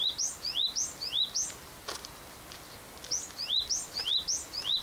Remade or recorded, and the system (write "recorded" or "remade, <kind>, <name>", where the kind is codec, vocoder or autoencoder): recorded